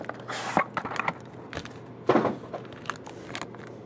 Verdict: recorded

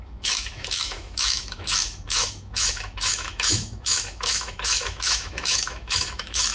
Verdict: remade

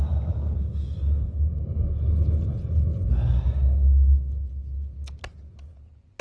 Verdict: recorded